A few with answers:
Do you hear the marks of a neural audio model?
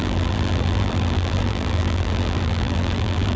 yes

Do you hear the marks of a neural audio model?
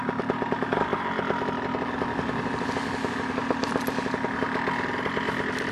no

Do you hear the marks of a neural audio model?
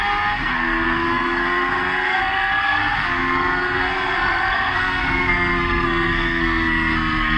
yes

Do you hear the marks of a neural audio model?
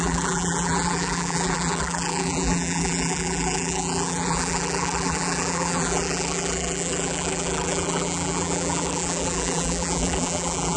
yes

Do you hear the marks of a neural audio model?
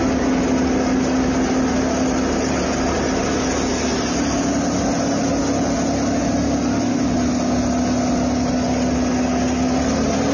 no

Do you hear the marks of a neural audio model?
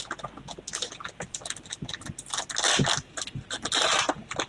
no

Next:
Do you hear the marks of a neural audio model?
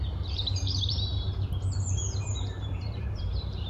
yes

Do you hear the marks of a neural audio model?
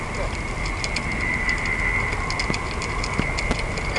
no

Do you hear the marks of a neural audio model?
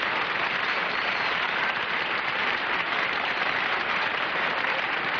yes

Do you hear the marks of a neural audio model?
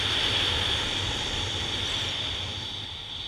no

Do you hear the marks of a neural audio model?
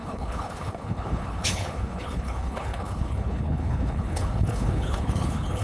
yes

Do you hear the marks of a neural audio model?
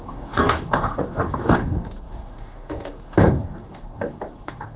yes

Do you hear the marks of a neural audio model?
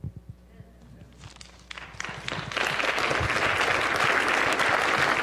no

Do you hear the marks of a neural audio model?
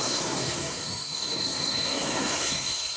yes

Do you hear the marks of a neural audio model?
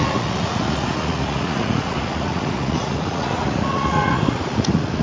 yes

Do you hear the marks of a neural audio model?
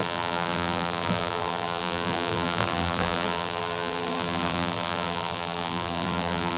yes